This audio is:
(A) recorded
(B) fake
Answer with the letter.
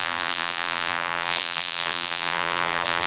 B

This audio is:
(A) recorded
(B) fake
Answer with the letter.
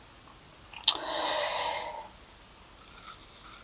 A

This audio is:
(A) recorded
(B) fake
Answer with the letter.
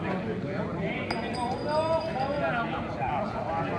A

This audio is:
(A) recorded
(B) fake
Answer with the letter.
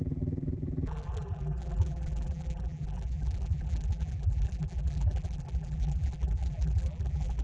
B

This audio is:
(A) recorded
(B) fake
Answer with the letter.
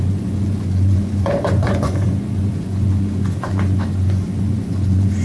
B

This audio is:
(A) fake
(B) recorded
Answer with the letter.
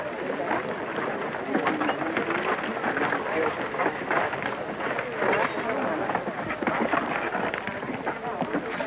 B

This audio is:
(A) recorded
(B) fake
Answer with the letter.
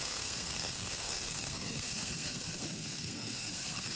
B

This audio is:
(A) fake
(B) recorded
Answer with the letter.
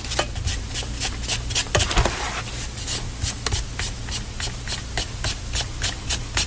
B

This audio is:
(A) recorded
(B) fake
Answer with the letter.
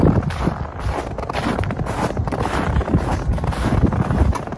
A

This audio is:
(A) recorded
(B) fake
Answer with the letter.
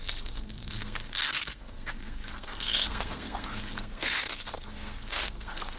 B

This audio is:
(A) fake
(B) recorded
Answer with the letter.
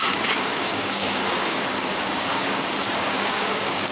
A